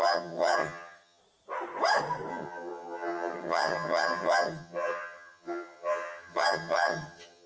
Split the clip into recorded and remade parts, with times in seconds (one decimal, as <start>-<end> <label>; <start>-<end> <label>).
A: 0.0-1.2 remade; 1.2-2.3 recorded; 2.3-7.5 remade